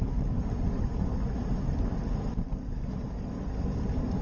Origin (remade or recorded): recorded